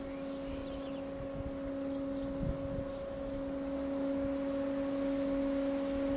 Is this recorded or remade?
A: recorded